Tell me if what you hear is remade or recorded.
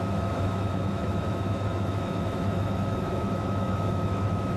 remade